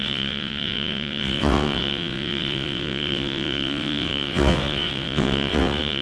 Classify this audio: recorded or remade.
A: remade